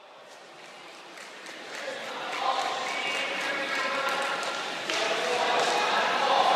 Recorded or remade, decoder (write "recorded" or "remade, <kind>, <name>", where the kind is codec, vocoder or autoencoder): remade, vocoder, BigVGAN v2